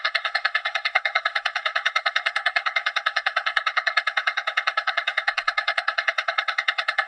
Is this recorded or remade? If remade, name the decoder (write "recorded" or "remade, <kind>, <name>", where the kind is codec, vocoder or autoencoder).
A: remade, codec, SNAC